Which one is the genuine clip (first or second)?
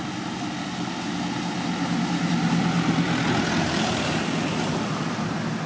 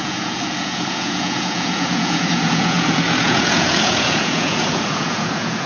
first